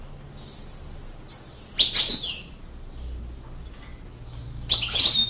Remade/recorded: recorded